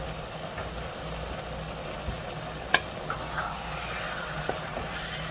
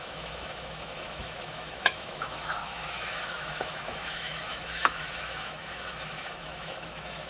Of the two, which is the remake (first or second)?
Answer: second